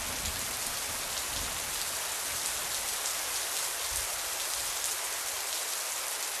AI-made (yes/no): no